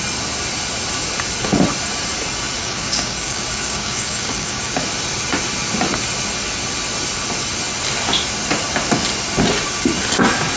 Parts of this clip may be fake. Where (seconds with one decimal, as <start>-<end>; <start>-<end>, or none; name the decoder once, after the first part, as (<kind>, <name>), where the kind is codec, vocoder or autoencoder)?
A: 2.6-4.8 (codec, DAC)